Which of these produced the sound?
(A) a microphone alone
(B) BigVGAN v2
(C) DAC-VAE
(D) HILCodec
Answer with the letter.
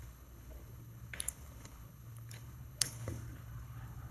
D